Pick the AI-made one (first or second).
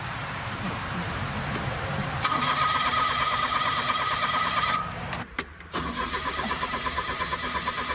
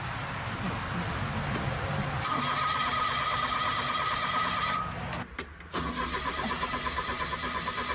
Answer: first